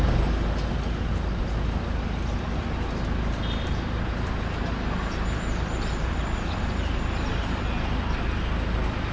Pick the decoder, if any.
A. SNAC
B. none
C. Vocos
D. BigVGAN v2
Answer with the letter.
B